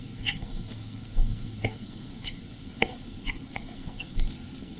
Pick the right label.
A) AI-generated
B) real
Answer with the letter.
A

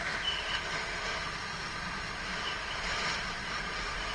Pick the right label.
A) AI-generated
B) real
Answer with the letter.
B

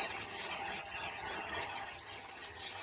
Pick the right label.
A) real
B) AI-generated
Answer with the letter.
B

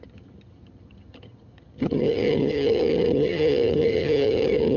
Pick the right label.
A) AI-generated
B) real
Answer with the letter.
A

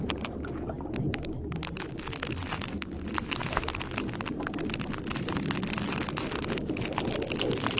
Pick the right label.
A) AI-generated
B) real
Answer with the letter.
B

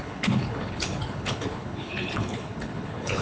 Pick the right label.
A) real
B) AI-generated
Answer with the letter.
B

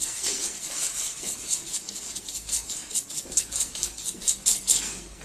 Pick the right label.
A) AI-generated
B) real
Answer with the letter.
A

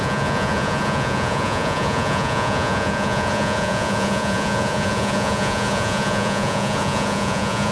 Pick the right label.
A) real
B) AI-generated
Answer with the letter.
B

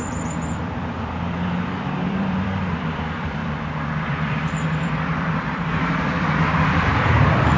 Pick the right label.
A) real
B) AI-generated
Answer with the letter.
B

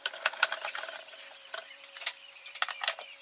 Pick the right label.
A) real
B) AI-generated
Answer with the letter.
B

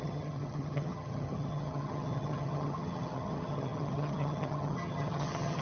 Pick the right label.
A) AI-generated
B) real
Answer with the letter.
A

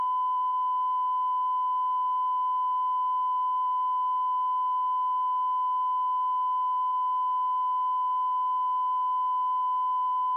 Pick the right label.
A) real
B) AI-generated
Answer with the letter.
A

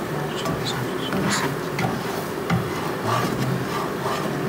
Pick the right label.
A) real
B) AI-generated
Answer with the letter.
A